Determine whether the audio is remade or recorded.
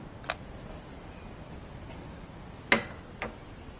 recorded